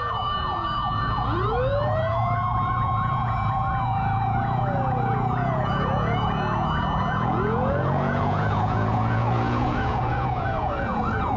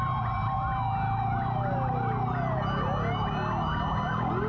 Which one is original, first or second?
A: second